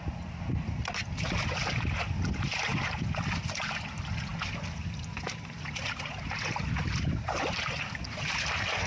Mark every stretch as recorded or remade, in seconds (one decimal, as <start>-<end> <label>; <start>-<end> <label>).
0.0-8.9 recorded